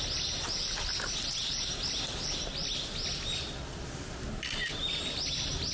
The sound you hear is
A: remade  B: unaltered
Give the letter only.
B